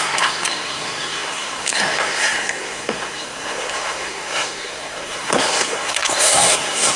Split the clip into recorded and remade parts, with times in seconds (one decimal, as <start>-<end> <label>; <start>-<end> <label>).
0.0-7.0 remade